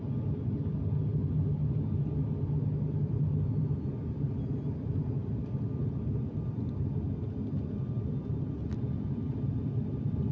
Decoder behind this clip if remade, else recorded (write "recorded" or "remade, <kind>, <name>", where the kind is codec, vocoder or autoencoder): recorded